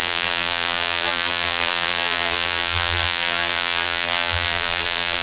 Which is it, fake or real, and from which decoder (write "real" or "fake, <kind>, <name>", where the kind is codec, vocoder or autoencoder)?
fake, vocoder, BigVGAN v2